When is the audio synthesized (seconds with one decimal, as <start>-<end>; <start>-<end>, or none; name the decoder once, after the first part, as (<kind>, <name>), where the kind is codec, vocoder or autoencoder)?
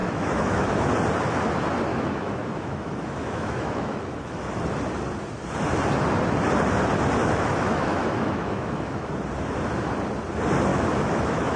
0.0-0.9 (autoencoder, DAC-VAE); 1.9-4.6; 7.2-9.1; 10.7-11.6